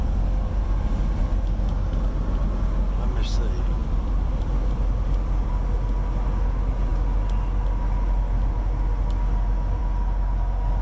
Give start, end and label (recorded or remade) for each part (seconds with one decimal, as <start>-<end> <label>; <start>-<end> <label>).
0.0-1.2 remade; 1.2-3.8 recorded; 3.8-5.5 remade; 5.5-10.8 recorded